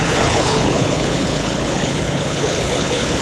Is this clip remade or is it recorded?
remade